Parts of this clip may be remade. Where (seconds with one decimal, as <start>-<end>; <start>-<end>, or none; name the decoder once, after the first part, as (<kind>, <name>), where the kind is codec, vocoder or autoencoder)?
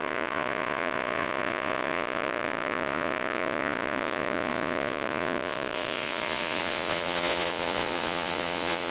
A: 0.0-8.9 (vocoder, Vocos)